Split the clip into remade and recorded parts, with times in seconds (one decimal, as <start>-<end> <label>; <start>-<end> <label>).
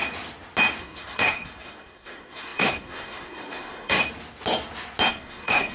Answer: 0.0-0.8 recorded; 0.8-4.0 remade; 4.0-5.1 recorded; 5.1-5.7 remade